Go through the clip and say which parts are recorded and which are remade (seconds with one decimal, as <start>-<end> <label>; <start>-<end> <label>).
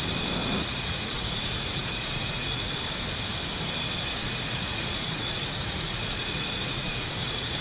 0.0-0.4 recorded; 0.4-2.8 remade; 2.8-4.2 recorded; 4.2-7.6 remade